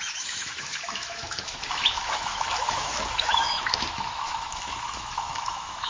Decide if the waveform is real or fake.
fake